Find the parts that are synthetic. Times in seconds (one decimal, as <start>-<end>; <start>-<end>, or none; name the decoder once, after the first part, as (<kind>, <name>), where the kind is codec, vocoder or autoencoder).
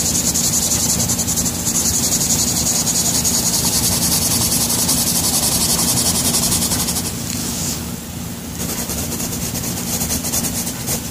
7.4-7.9 (autoencoder, DAC-VAE)